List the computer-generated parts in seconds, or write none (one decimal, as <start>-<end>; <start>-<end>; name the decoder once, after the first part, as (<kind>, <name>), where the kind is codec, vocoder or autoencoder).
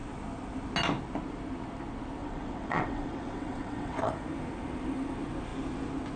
2.2-4.1 (vocoder, WaveNeXt)